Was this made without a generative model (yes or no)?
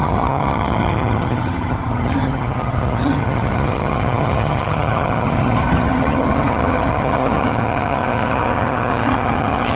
no